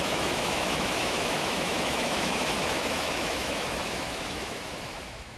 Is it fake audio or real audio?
fake